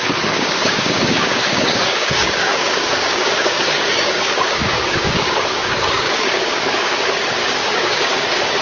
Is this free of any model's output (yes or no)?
no